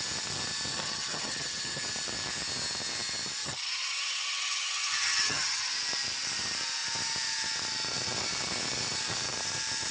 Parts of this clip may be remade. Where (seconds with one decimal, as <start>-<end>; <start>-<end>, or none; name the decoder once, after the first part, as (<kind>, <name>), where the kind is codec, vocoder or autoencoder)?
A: 0.7-1.8 (vocoder, HiFi-GAN); 3.4-5.7